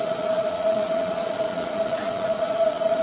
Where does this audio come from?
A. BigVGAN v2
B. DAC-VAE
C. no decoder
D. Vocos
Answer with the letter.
D